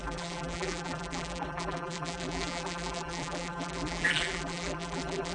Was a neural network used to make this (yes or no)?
yes